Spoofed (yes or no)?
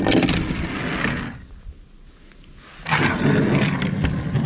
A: no